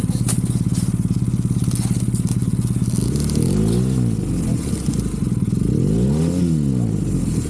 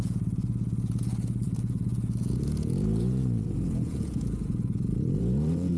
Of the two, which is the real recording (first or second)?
first